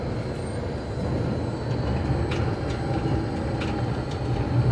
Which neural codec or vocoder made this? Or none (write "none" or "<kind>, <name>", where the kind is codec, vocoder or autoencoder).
none